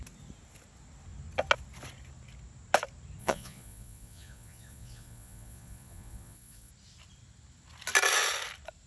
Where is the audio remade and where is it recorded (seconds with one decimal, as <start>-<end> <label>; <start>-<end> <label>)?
0.0-3.2 recorded; 3.2-6.7 remade; 6.7-8.9 recorded